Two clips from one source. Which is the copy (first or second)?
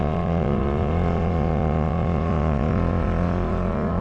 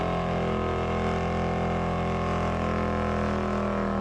first